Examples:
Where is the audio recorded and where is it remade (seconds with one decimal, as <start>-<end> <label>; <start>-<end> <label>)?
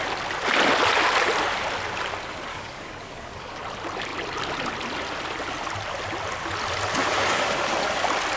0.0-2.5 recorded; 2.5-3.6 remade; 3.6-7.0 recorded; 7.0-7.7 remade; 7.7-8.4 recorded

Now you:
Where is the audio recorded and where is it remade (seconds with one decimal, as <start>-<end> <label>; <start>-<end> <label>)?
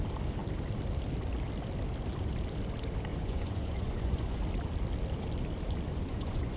0.0-3.1 recorded; 3.1-4.4 remade; 4.4-5.9 recorded; 5.9-6.6 remade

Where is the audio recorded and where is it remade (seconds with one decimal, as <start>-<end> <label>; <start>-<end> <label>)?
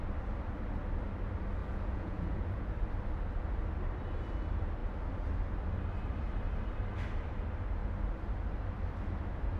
0.0-1.6 recorded; 1.6-2.7 remade; 2.7-9.6 recorded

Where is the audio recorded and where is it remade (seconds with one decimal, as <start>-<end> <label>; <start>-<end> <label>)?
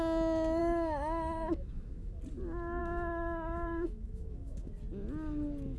0.0-0.6 recorded; 0.6-2.2 remade; 2.2-2.8 recorded; 2.8-4.7 remade; 4.7-5.8 recorded